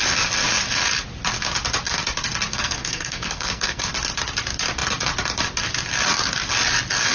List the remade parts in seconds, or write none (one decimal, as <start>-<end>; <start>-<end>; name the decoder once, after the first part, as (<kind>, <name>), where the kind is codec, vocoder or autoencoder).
2.5-3.8 (codec, SNAC)